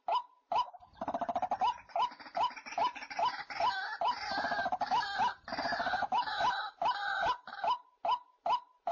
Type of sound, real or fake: real